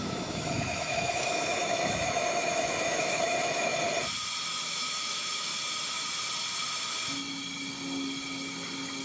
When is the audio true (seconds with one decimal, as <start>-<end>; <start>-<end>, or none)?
3.7-4.7; 5.5-9.0

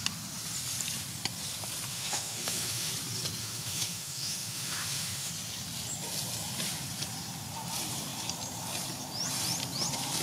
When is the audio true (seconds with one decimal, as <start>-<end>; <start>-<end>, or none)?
0.0-1.9; 2.9-3.4; 5.3-10.2

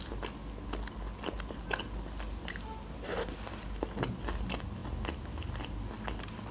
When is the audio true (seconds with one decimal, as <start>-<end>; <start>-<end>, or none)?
0.0-6.5

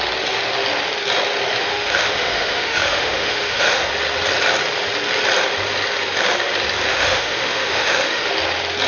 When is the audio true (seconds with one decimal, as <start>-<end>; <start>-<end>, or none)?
0.0-1.6; 3.9-6.9; 8.3-8.9

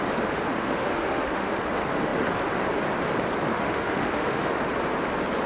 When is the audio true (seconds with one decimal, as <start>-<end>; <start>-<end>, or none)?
0.0-0.5; 1.5-3.5; 4.6-5.5

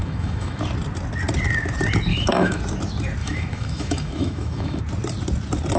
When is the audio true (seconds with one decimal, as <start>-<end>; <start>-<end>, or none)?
0.6-2.1; 2.6-3.2; 4.8-5.8

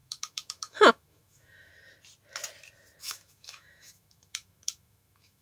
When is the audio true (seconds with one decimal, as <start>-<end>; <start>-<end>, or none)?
1.7-3.0

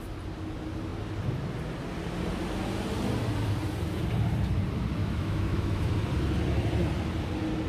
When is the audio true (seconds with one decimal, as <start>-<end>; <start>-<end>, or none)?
0.0-5.0; 5.9-7.7